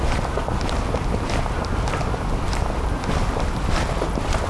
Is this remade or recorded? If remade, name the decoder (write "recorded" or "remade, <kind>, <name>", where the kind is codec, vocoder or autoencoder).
recorded